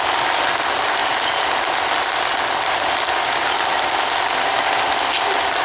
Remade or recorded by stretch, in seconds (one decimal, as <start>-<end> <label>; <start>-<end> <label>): 0.0-5.6 recorded